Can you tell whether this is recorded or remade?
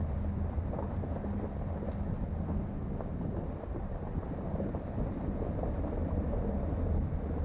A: recorded